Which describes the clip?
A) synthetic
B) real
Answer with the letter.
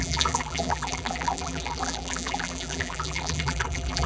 A